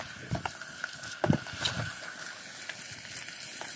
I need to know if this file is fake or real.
real